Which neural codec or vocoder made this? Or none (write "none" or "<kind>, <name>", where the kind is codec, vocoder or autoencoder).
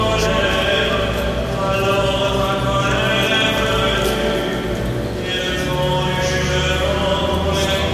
none